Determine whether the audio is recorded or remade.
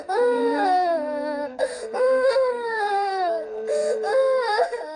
remade